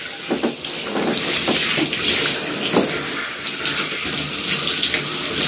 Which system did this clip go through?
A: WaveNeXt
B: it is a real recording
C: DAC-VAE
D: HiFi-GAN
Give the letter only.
B